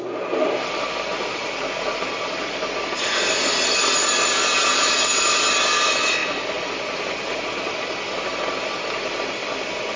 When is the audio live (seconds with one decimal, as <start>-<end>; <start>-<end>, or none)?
0.0-10.0